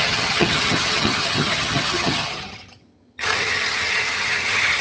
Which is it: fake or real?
fake